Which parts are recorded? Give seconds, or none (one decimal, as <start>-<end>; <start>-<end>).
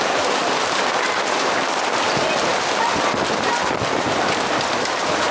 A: 0.0-5.3